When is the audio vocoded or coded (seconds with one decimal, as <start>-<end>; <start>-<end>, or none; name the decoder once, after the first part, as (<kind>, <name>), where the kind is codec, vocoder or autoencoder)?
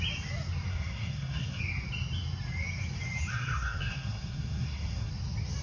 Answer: 0.7-1.6 (codec, SNAC); 3.3-5.1